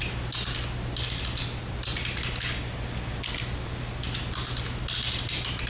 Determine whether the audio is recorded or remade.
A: recorded